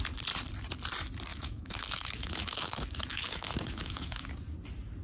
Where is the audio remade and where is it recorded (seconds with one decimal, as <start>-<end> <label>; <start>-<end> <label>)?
0.0-1.3 recorded; 1.3-4.3 remade; 4.3-5.0 recorded